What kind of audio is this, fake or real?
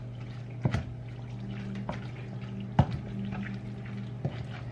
real